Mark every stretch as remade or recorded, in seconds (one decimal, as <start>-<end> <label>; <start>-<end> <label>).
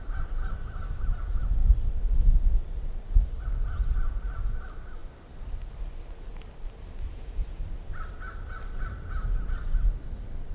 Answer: 0.0-10.5 recorded